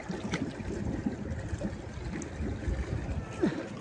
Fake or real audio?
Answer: real